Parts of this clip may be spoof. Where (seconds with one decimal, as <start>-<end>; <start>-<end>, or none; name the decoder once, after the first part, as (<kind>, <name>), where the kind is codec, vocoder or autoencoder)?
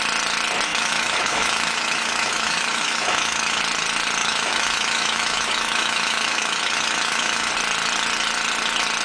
0.7-3.6 (autoencoder, DAC-VAE); 4.2-7.5